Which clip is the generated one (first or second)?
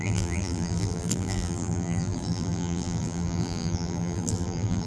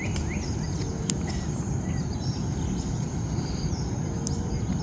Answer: first